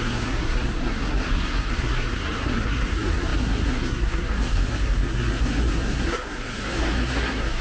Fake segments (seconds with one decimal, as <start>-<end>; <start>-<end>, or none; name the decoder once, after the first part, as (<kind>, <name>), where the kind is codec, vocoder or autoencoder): 0.0-7.6 (codec, SNAC)